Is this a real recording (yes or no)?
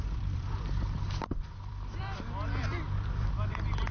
no